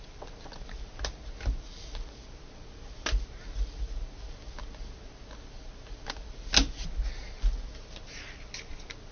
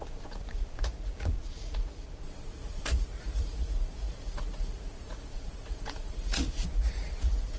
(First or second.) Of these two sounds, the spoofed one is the second